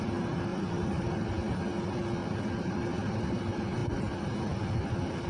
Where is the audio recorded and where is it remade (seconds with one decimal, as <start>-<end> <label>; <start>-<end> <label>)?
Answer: 0.0-0.5 recorded; 0.5-1.3 remade; 1.3-2.2 recorded; 2.2-3.4 remade; 3.4-5.3 recorded